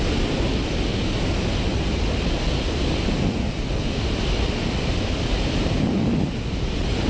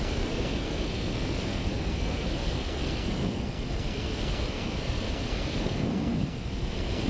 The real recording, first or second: first